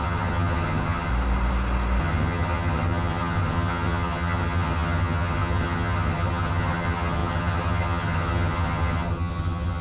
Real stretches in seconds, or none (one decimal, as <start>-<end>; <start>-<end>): 1.1-2.0